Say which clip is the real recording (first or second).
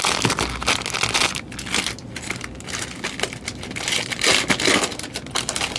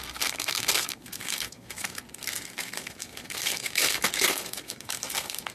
first